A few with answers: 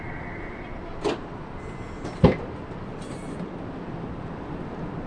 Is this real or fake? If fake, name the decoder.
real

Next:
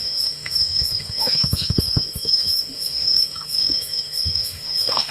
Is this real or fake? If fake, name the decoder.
fake, autoencoder, DAC-VAE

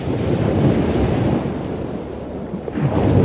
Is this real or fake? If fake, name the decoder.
real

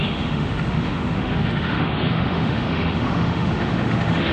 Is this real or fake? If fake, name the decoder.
fake, autoencoder, DAC-VAE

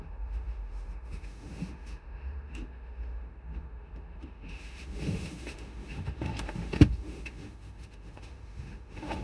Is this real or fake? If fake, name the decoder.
fake, autoencoder, DAC-VAE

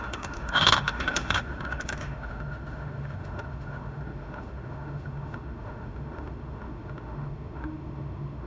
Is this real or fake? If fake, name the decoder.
fake, autoencoder, DAC-VAE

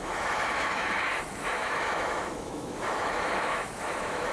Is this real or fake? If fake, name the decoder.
fake, autoencoder, DAC-VAE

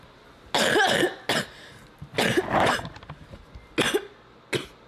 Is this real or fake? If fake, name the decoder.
real